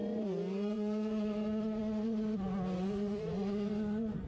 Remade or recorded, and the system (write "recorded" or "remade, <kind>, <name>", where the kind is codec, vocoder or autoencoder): remade, vocoder, Vocos